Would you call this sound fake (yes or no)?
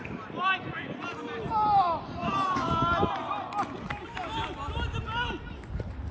no